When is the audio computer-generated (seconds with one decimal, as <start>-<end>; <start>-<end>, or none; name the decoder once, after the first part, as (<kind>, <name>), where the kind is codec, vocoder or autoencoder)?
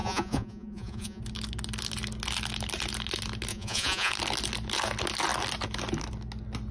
0.0-1.2 (vocoder, Vocos); 3.5-4.1